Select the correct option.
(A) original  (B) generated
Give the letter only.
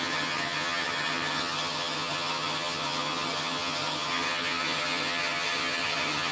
B